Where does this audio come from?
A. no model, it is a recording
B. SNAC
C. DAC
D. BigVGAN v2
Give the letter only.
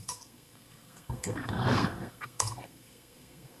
B